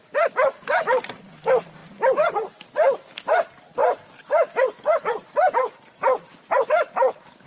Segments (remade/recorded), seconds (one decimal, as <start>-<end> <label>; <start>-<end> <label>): 0.0-7.5 recorded